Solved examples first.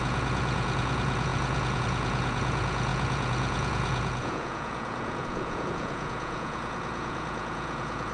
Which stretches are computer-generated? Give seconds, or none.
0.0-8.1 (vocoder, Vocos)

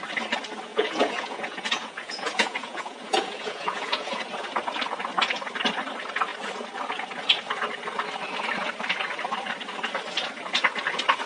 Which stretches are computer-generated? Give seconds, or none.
0.7-4.2 (vocoder, Vocos)